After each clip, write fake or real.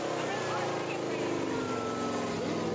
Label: real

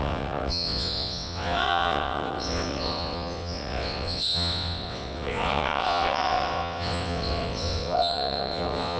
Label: fake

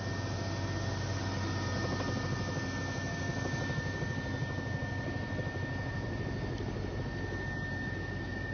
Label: real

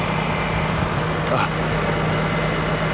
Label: real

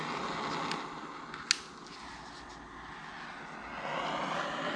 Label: real